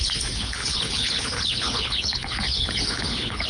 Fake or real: fake